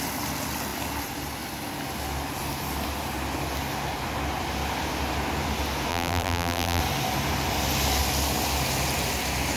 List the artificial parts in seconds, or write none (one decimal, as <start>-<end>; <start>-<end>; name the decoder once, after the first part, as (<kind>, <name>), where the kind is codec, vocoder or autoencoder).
5.9-6.8 (vocoder, BigVGAN v2)